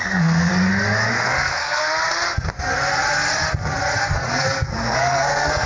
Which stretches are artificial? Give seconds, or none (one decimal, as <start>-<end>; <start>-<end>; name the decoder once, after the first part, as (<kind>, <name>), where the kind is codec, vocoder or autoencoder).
0.0-0.5 (codec, SNAC); 1.1-1.8; 4.3-5.7